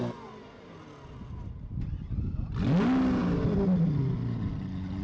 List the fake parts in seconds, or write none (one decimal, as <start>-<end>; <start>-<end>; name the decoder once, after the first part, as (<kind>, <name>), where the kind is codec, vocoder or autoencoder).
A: none